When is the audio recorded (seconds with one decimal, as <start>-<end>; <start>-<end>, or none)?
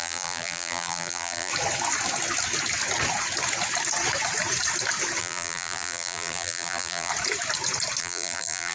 1.5-5.2; 7.1-8.0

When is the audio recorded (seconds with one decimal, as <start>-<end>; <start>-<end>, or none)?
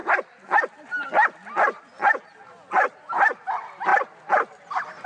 0.0-3.9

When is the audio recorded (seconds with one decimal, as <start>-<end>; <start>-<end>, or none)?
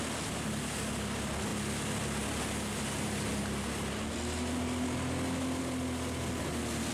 0.0-6.9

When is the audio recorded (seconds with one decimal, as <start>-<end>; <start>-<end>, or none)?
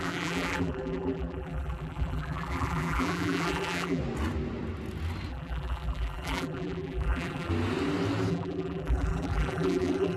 4.0-5.3; 7.5-8.3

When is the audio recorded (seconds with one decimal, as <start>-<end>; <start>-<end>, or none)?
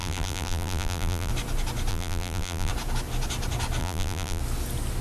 1.3-1.9; 2.7-3.8; 4.4-5.0